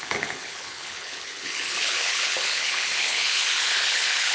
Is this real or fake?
fake